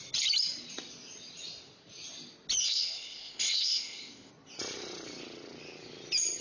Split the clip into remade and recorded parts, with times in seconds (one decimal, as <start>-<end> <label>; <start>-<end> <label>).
0.0-2.6 recorded; 2.6-4.3 remade; 4.3-6.4 recorded